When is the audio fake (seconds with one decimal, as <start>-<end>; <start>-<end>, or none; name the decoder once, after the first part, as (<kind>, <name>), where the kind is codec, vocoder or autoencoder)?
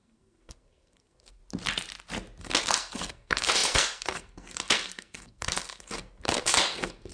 0.0-1.4 (codec, SNAC); 2.4-7.1